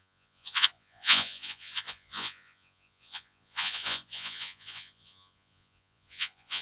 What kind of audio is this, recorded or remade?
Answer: remade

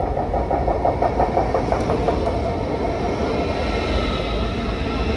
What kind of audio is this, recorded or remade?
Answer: recorded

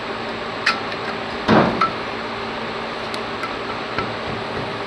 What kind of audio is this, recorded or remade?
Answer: recorded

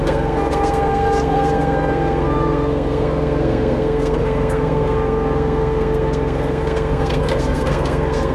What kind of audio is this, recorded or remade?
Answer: remade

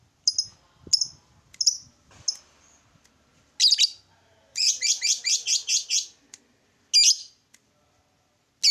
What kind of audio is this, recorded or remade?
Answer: recorded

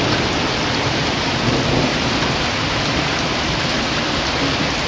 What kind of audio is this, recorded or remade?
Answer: recorded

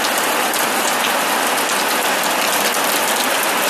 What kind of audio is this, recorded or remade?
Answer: recorded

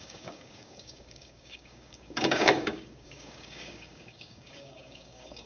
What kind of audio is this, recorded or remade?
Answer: remade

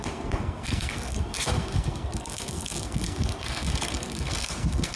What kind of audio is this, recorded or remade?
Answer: remade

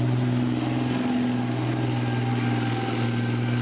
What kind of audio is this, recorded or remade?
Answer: recorded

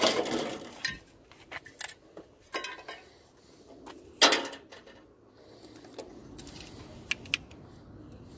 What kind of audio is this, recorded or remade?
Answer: recorded